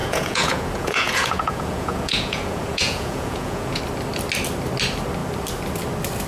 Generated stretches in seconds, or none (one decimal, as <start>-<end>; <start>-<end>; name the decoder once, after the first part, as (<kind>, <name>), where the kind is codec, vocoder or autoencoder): 0.0-3.8 (vocoder, Vocos)